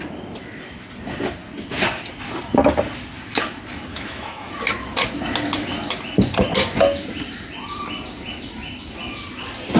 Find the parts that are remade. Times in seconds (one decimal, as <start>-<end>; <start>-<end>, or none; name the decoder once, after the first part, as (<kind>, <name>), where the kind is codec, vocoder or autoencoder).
3.9-4.5 (autoencoder, DAC-VAE)

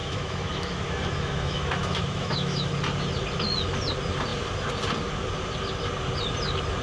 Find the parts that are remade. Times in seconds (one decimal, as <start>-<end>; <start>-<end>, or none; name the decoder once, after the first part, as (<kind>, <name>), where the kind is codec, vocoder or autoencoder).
0.0-2.7 (autoencoder, DAC-VAE)